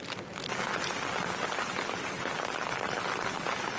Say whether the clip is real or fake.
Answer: real